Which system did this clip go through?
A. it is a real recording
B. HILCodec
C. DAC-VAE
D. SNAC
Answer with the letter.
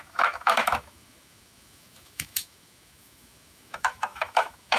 C